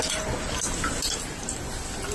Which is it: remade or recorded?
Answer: recorded